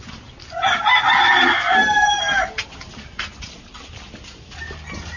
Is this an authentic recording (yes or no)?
yes